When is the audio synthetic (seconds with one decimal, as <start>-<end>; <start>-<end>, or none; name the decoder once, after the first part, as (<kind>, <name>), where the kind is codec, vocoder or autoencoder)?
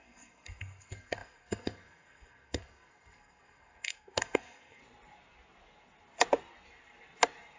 0.0-4.8 (codec, SNAC)